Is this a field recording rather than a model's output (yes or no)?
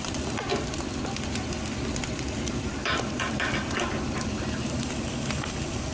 yes